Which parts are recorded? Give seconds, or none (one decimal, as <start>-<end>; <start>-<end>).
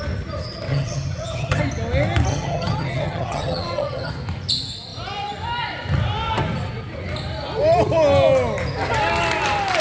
0.0-0.7; 1.6-2.3; 4.1-9.8